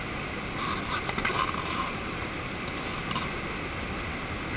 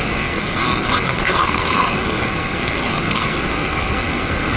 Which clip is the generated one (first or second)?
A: second